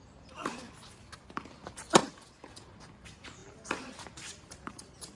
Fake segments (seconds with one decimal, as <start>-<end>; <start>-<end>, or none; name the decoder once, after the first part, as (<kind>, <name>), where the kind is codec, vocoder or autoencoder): 0.0-0.4 (vocoder, BigVGAN v2); 1.2-5.1